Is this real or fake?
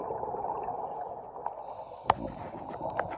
real